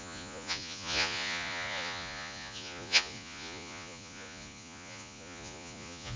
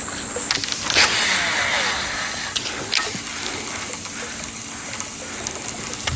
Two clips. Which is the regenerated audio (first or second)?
first